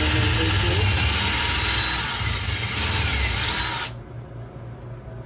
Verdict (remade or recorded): recorded